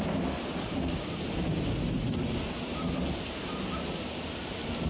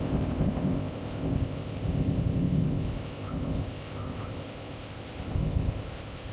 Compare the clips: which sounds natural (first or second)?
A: first